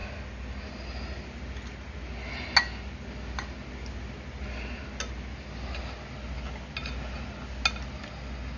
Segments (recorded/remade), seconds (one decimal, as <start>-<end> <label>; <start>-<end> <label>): 0.0-8.6 recorded